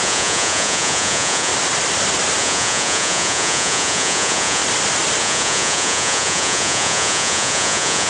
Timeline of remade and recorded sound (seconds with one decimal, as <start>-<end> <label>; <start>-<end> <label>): 0.0-1.5 remade; 1.5-2.4 recorded; 2.4-4.6 remade; 4.6-5.2 recorded; 5.2-8.1 remade